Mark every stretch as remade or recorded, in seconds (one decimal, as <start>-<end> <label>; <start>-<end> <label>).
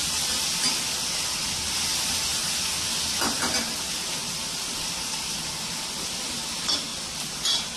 0.0-7.8 recorded